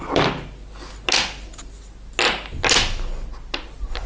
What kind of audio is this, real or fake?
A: real